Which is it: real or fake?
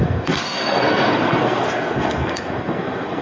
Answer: fake